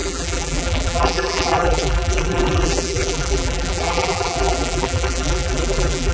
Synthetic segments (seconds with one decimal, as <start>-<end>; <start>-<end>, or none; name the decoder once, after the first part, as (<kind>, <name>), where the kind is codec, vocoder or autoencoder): 0.0-6.1 (vocoder, BigVGAN v2)